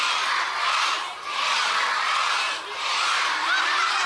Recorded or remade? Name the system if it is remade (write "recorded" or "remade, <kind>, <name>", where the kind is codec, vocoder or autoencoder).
recorded